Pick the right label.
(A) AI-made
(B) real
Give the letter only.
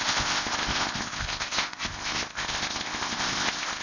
A